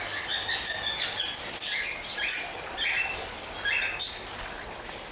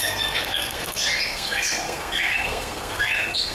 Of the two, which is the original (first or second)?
first